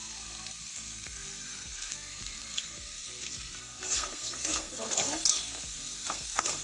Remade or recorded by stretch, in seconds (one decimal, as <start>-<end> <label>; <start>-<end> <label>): 0.0-6.6 remade